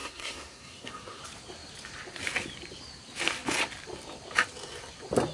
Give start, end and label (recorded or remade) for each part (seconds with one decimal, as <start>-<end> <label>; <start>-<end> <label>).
0.0-1.2 remade; 1.2-5.3 recorded